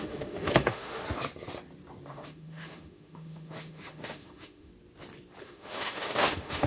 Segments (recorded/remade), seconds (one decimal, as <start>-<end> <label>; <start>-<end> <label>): 0.0-1.0 remade; 1.0-2.1 recorded; 2.1-4.7 remade; 4.7-5.4 recorded; 5.4-6.7 remade